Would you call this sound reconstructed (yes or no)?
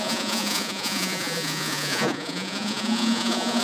yes